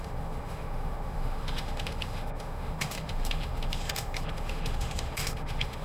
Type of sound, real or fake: fake